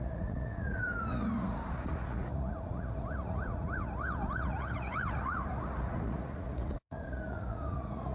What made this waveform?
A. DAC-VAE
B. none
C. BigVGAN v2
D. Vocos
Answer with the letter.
D